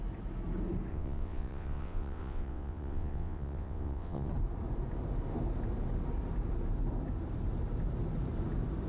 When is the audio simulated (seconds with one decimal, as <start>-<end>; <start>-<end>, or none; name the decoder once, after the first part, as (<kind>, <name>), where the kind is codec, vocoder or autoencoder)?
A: 0.9-4.3 (vocoder, WaveNeXt)